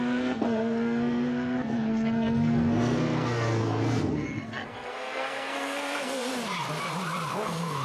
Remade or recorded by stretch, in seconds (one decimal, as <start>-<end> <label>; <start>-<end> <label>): 0.0-6.3 remade; 6.3-7.3 recorded; 7.3-7.8 remade